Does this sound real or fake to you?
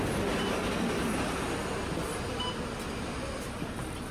real